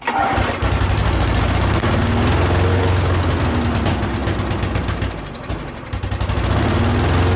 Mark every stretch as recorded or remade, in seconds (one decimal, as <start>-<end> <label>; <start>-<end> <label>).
0.0-2.7 recorded; 2.7-3.3 remade; 3.3-7.4 recorded